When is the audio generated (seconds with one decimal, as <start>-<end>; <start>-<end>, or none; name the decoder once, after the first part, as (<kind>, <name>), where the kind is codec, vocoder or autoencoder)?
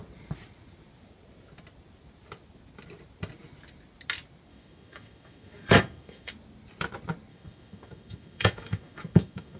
4.5-6.3 (autoencoder, DAC-VAE); 7.3-9.6